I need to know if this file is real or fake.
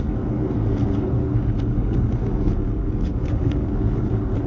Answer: fake